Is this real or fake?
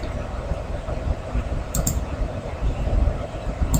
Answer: fake